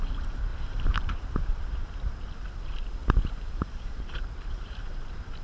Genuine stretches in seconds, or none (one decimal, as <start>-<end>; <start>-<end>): 0.0-0.5; 1.9-3.0; 4.9-5.4